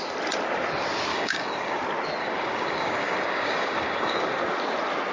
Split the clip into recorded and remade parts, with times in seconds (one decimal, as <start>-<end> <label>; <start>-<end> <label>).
0.0-1.1 recorded; 1.1-1.8 remade; 1.8-2.2 recorded; 2.2-4.4 remade; 4.4-5.1 recorded